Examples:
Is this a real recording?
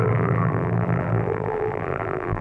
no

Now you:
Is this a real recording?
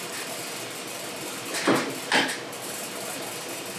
yes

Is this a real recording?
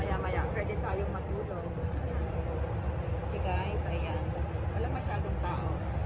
yes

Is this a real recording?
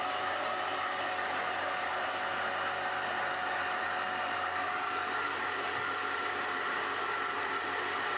no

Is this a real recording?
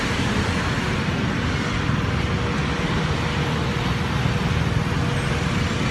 yes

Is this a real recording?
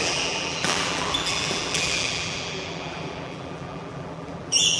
no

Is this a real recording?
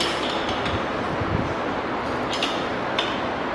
yes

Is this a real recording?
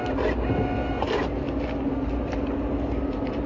yes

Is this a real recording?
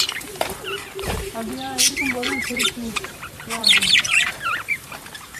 no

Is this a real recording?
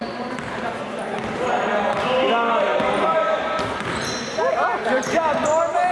no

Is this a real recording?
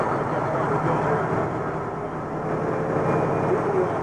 yes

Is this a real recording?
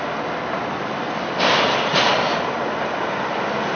yes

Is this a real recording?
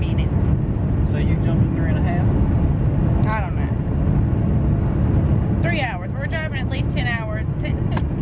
yes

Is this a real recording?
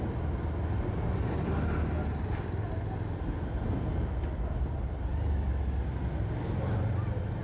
yes